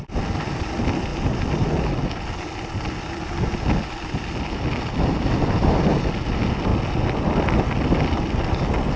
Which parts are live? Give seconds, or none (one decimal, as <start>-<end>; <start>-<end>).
0.0-9.0